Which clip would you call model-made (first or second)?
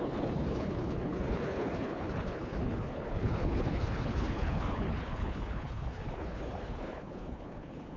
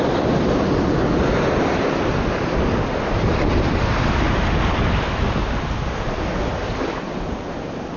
first